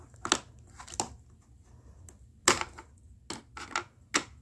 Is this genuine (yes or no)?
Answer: yes